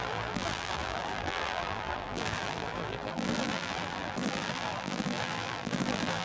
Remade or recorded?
remade